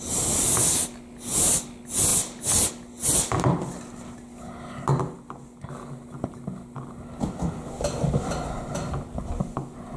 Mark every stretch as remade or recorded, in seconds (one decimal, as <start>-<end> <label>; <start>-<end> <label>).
0.0-10.0 recorded